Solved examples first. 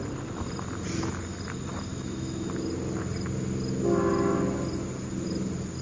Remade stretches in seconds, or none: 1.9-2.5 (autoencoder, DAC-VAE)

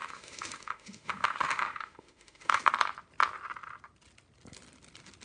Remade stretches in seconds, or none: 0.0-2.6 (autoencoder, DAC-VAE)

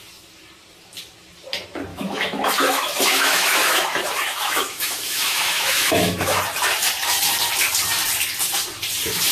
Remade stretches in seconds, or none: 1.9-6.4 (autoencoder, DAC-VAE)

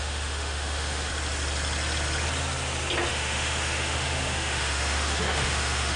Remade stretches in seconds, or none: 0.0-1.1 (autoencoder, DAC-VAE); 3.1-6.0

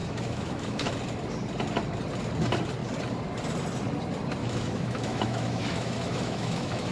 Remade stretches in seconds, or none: 0.0-0.9 (autoencoder, DAC-VAE); 4.4-6.9

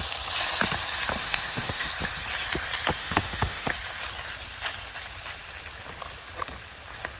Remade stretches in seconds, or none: 1.2-1.9 (autoencoder, DAC-VAE); 3.0-3.7